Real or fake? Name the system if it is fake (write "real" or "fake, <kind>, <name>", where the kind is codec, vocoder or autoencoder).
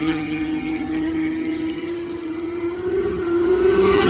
fake, vocoder, HiFi-GAN